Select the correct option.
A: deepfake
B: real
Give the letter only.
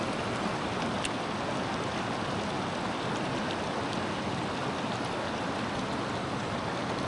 B